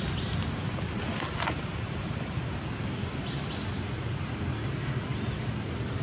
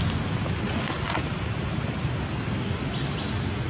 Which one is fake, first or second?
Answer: first